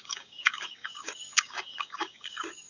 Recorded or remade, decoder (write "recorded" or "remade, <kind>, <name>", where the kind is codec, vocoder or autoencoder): remade, codec, DAC